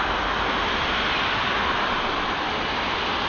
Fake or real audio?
real